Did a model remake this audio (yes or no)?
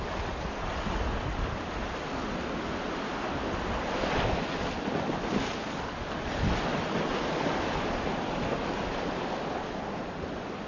no